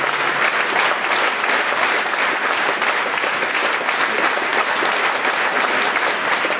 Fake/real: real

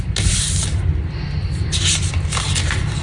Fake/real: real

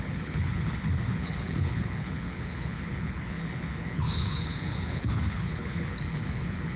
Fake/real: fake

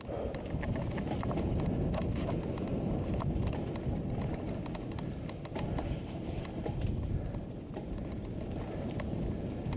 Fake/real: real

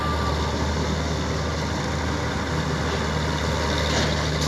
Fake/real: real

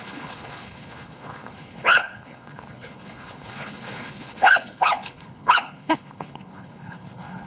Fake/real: fake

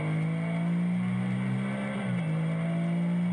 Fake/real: real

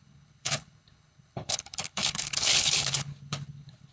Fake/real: fake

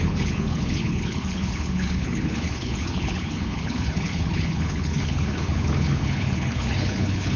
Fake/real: fake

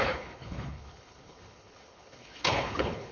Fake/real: fake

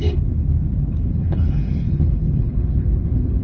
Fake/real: fake